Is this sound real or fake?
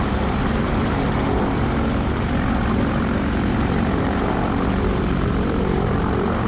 fake